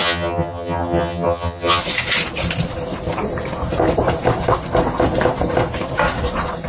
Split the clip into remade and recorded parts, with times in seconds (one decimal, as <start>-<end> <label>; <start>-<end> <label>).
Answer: 0.0-1.8 remade; 1.8-6.7 recorded